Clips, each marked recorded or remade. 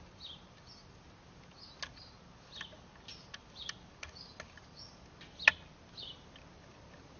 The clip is recorded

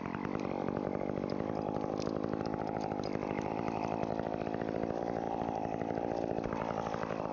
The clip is remade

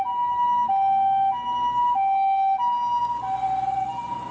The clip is recorded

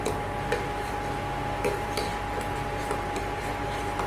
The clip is recorded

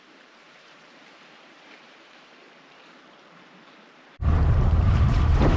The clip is remade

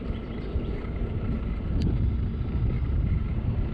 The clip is remade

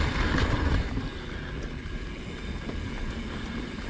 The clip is recorded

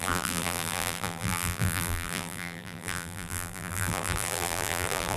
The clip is remade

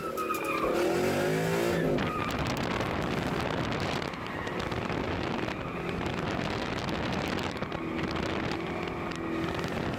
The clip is recorded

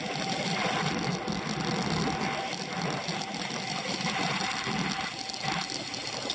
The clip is recorded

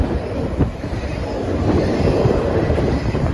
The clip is remade